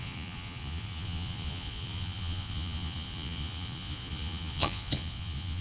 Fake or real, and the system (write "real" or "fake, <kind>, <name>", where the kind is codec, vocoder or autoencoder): fake, vocoder, Vocos